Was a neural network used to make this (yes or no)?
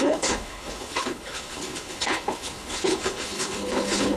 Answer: yes